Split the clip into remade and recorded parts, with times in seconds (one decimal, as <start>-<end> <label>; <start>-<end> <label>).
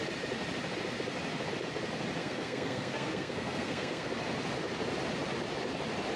0.0-2.2 recorded; 2.2-4.1 remade; 4.1-6.2 recorded